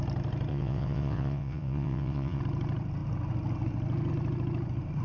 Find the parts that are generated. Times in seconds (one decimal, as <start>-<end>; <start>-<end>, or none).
0.5-2.4